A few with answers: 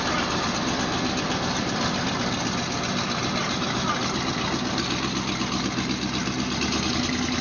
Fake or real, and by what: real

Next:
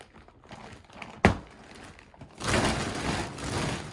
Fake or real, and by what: real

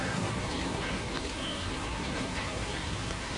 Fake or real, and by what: fake, codec, SNAC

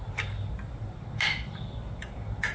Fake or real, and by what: real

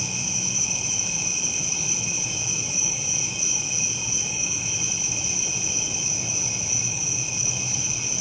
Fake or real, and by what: fake, autoencoder, DAC-VAE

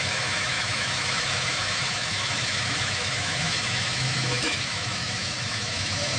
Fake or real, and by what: fake, autoencoder, DAC-VAE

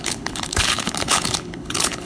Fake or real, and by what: fake, codec, HILCodec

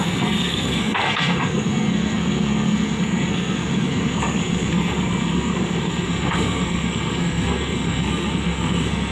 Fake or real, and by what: fake, codec, SNAC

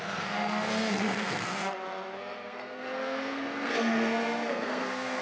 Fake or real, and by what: fake, codec, SNAC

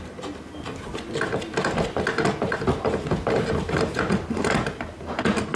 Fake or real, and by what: real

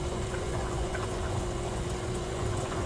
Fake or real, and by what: fake, vocoder, Vocos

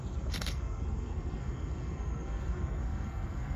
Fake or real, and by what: fake, codec, SNAC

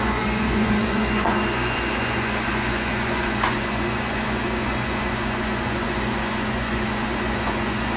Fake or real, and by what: fake, vocoder, Vocos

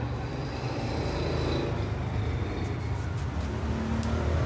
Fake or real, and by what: real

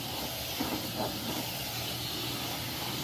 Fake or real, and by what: real